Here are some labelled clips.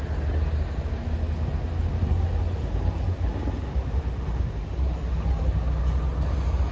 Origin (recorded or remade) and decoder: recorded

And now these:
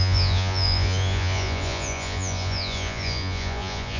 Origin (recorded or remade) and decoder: remade, vocoder, Vocos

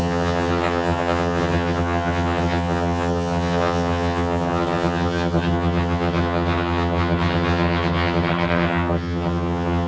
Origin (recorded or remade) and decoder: remade, vocoder, HiFi-GAN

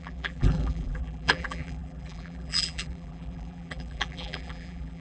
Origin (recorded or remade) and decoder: remade, vocoder, BigVGAN v2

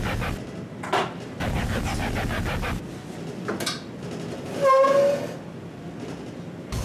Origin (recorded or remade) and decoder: recorded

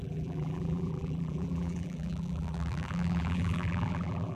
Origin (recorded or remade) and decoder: remade, vocoder, BigVGAN v2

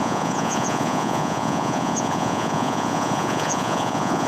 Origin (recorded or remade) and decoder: remade, vocoder, Vocos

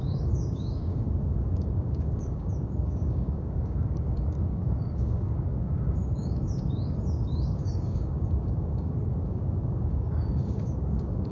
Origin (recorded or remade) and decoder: remade, codec, DAC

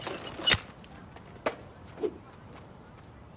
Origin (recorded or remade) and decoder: recorded